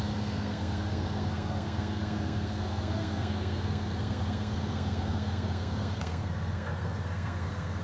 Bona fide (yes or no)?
no